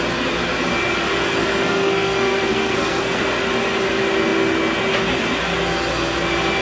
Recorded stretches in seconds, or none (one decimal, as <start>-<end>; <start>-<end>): 0.0-1.4; 3.3-6.6